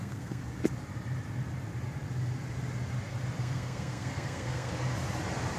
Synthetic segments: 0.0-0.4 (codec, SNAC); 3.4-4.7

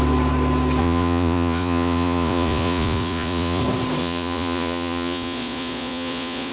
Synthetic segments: 0.8-3.6 (vocoder, Vocos); 4.0-6.5

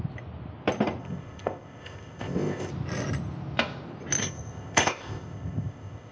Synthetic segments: 1.0-2.7 (codec, ZipCodec); 4.2-6.1

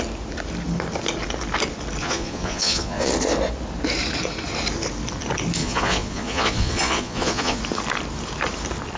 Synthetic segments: 2.0-3.1 (vocoder, Vocos); 5.6-7.6

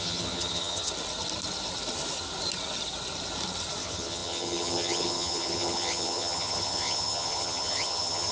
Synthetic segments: 0.0-0.9 (vocoder, HiFi-GAN); 3.8-8.3

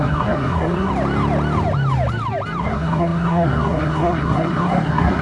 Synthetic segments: 0.0-0.9 (codec, SNAC); 2.6-5.2

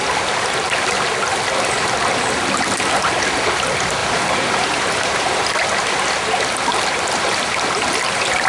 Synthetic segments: 4.0-5.4 (vocoder, BigVGAN v2)